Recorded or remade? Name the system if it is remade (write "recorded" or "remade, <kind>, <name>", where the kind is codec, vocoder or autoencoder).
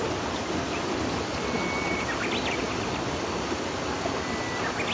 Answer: recorded